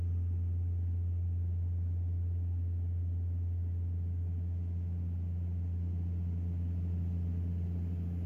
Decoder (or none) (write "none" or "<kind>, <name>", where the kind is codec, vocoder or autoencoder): none